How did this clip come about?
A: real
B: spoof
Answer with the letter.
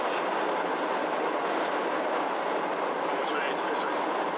A